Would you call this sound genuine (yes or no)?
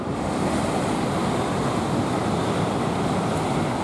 no